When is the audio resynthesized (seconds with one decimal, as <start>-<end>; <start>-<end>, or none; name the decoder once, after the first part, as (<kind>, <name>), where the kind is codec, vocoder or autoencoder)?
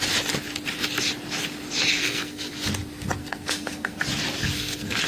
1.9-2.5 (codec, SNAC); 3.2-4.0; 4.4-5.1